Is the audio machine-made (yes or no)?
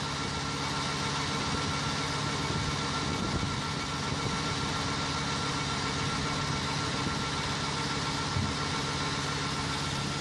no